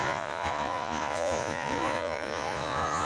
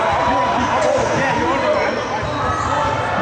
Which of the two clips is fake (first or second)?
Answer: first